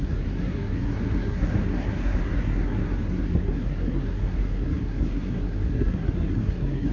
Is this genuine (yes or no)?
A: no